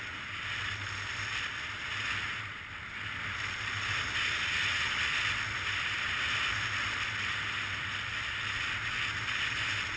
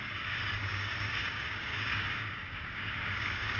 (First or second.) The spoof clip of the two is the second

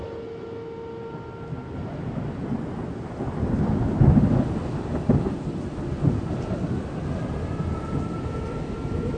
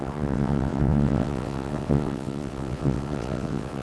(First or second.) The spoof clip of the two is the second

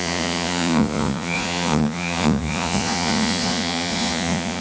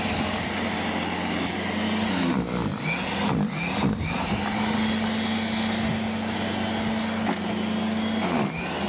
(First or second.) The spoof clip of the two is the first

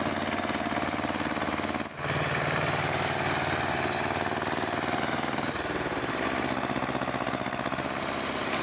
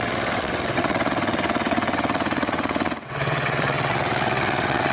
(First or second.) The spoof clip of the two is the second